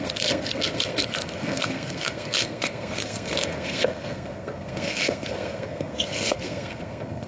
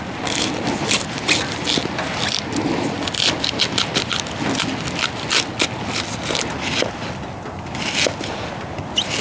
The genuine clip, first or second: second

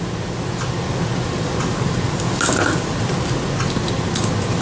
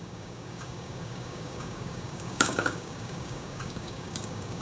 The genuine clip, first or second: first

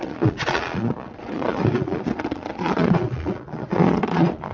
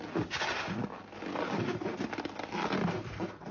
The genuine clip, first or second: second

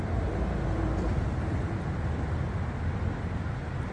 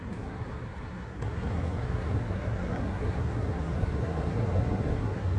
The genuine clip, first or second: first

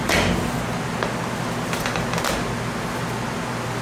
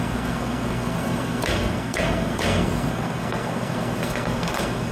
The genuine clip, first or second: first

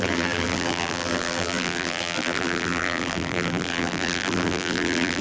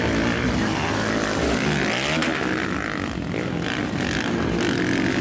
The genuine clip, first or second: second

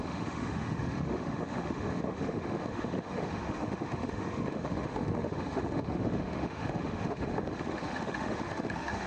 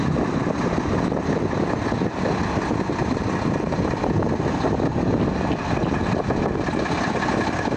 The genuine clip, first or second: second